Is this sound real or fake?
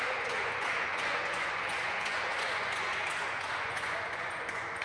fake